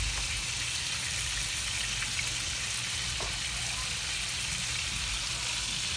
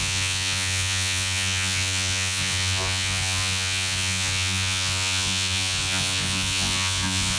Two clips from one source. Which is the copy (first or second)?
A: second